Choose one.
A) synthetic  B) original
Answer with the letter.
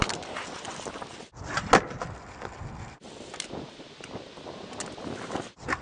B